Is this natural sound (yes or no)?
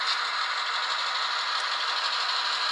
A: yes